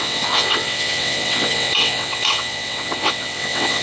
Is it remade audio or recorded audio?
remade